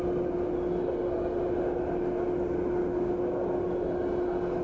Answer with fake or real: real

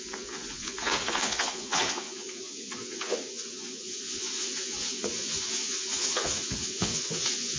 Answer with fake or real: fake